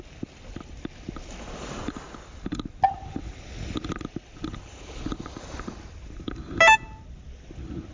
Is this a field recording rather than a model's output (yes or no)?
no